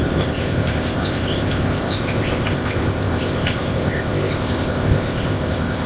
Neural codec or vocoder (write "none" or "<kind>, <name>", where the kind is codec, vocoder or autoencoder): codec, ZipCodec